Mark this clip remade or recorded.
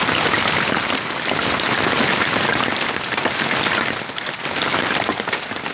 recorded